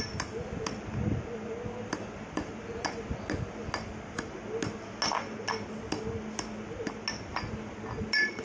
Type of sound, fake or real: real